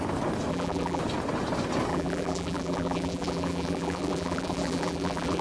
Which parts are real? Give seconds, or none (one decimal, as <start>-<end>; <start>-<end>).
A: 0.0-0.5; 1.0-1.9